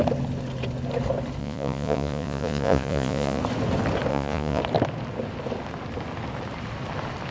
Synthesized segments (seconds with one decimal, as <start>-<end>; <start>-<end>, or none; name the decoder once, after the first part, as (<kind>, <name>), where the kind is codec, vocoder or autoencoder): 1.4-3.4 (vocoder, Vocos); 4.1-4.6